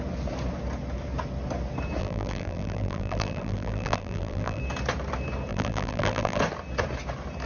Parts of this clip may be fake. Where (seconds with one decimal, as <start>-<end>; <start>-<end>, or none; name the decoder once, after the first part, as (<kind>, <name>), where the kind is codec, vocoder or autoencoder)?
2.0-4.6 (vocoder, BigVGAN v2); 5.5-6.4